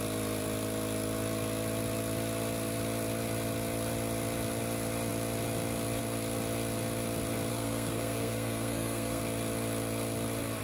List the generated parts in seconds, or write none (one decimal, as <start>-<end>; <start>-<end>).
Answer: 7.5-9.2